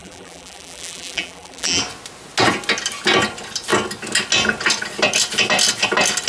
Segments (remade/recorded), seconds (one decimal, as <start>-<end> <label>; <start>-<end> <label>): 0.0-1.8 remade; 1.8-6.3 recorded